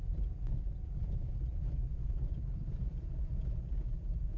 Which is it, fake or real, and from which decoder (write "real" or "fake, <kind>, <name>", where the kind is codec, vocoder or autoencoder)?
fake, vocoder, Vocos